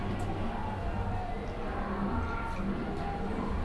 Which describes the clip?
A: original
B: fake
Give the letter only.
A